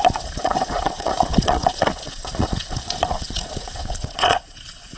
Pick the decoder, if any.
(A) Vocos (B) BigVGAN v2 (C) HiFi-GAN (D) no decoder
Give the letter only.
A